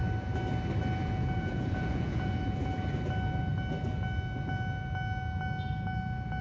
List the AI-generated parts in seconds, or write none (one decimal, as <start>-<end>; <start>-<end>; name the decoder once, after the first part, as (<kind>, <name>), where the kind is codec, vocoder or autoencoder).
1.0-2.8 (vocoder, Vocos)